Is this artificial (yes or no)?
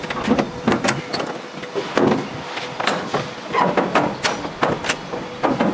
no